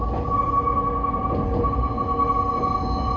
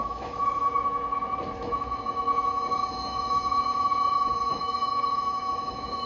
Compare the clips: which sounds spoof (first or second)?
second